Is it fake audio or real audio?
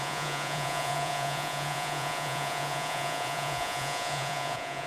fake